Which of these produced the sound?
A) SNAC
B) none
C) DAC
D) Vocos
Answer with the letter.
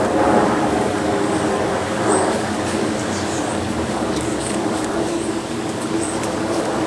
C